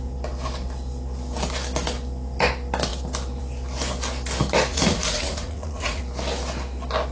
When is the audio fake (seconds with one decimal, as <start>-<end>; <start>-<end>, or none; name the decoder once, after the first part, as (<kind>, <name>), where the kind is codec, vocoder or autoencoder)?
4.7-6.0 (vocoder, Vocos)